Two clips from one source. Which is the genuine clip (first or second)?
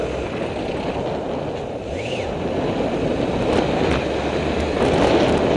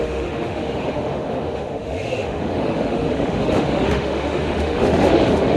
first